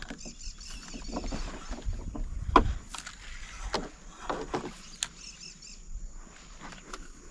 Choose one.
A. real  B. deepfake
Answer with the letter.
A